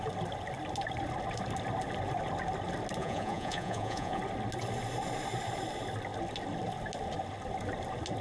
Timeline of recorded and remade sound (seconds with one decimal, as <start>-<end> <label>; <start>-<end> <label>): 0.0-3.0 recorded; 3.0-4.2 remade; 4.2-8.2 recorded

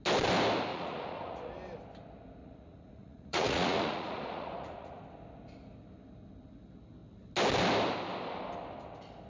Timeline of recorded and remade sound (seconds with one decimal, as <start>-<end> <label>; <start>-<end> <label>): 0.0-0.7 recorded; 0.7-1.5 remade; 1.5-2.4 recorded; 2.4-5.0 remade; 5.0-9.3 recorded

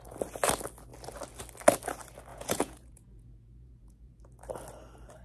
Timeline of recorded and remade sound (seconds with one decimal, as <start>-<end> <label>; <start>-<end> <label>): 0.0-2.3 recorded; 2.3-4.2 remade; 4.2-5.2 recorded

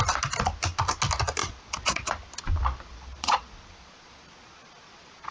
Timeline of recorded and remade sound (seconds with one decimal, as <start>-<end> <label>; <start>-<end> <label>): 0.0-1.4 recorded; 1.4-2.1 remade; 2.1-2.9 recorded; 2.9-5.3 remade